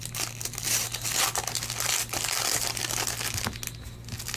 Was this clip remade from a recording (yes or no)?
no